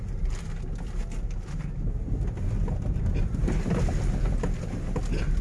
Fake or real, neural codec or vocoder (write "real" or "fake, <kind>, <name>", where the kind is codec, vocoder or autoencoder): real